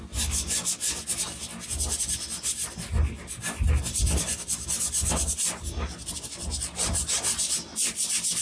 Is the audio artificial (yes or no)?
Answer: no